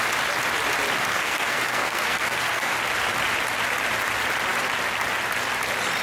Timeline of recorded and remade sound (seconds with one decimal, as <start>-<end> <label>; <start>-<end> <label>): 0.0-1.1 recorded; 1.1-2.7 remade; 2.7-6.0 recorded